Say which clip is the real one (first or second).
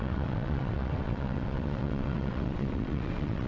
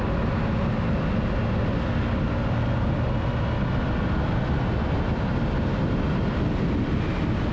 second